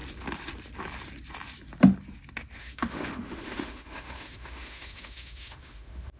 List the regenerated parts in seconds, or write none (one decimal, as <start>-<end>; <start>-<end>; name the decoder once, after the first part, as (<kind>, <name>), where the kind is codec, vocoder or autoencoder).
2.6-6.2 (autoencoder, DAC-VAE)